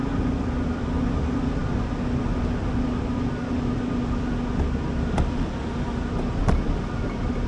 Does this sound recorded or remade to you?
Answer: recorded